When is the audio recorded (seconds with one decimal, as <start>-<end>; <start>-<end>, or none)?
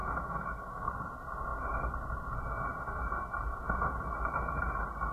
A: 0.9-5.1